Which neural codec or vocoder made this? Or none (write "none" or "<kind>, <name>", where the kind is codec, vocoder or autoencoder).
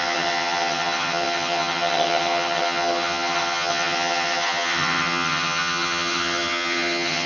vocoder, HiFi-GAN